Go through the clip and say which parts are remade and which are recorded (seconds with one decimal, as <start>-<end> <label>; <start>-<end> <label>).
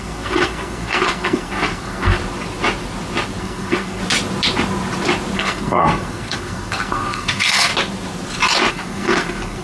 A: 0.0-2.2 remade; 2.2-3.4 recorded; 3.4-4.0 remade; 4.0-5.4 recorded; 5.4-7.7 remade; 7.7-8.7 recorded; 8.7-9.6 remade